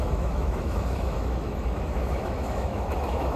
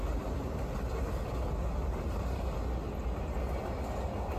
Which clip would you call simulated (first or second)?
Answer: first